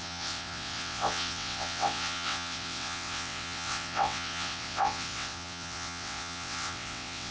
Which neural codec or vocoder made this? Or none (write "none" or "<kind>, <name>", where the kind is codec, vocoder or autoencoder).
vocoder, WaveNeXt